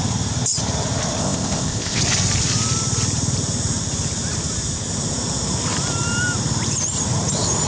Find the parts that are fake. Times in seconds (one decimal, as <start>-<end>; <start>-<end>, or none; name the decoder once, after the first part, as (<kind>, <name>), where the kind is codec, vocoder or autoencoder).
1.2-2.0 (codec, ZipCodec)